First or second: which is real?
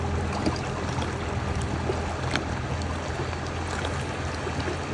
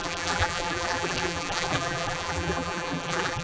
first